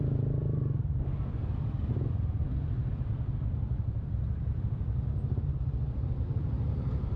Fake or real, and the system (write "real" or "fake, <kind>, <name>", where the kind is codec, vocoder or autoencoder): real